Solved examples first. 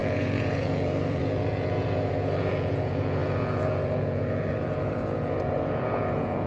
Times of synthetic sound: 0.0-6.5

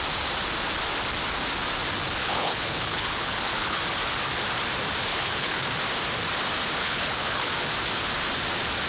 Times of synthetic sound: 2.2-3.8; 5.1-5.6; 6.8-7.5

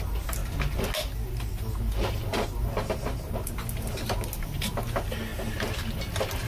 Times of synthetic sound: none

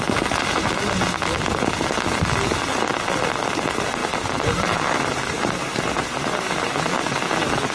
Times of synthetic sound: 4.0-6.7

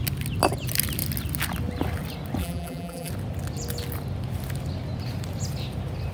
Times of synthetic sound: 2.4-3.1

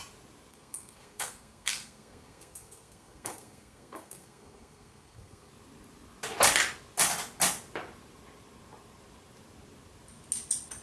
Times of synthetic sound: 0.5-5.5

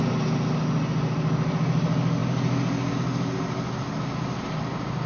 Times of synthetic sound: none

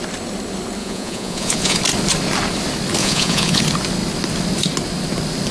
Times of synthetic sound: 0.8-1.8; 3.0-3.6